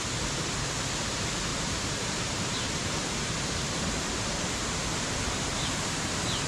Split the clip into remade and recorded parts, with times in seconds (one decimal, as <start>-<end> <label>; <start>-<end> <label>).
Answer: 0.0-1.5 recorded; 1.5-4.2 remade; 4.2-6.5 recorded